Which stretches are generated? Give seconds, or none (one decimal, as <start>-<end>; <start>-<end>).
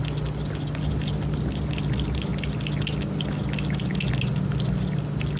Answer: none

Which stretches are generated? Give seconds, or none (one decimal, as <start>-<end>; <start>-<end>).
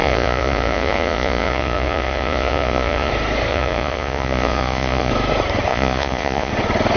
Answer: 0.0-3.1; 3.5-5.1; 5.7-6.5